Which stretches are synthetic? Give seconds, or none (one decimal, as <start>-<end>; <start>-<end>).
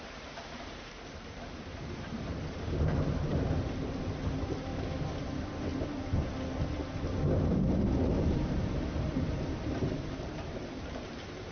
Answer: 0.0-4.7; 5.2-5.7; 7.8-11.5